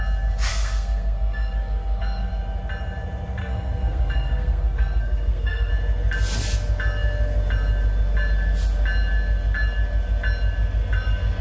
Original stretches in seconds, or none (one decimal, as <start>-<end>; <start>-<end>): 0.0-0.5; 2.3-3.4; 5.7-11.4